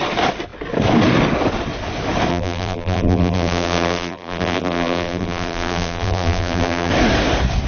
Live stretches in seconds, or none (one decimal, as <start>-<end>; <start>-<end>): 0.0-2.3; 6.9-7.7